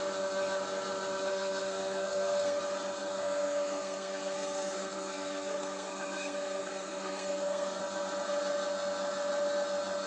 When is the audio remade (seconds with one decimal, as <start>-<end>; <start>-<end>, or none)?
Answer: 1.3-2.6; 3.0-7.8